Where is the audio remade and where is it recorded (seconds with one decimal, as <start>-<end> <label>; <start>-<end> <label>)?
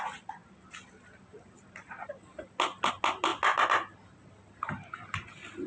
0.0-5.7 recorded